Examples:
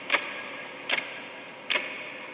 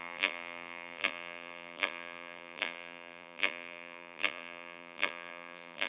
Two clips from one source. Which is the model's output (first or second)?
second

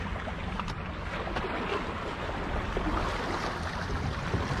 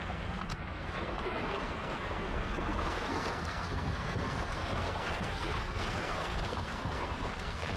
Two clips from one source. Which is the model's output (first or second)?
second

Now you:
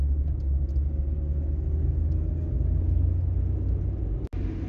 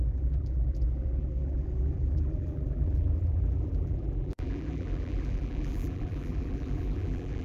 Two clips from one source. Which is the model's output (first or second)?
second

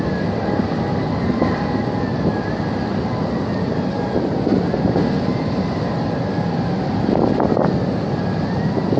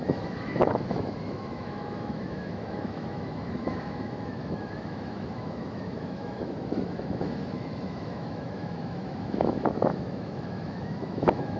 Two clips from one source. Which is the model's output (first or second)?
second